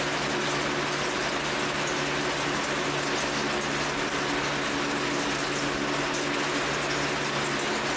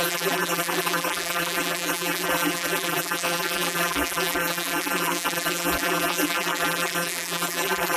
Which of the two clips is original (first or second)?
first